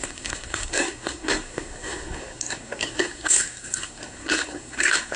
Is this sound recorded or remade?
remade